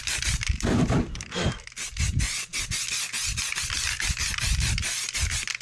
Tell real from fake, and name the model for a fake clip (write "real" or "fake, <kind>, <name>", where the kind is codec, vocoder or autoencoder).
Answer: real